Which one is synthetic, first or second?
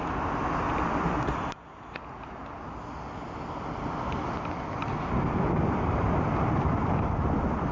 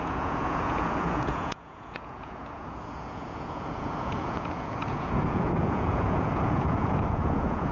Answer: second